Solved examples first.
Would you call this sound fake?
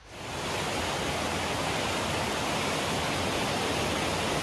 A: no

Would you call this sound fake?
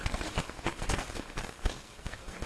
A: yes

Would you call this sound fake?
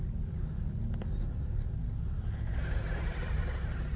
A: no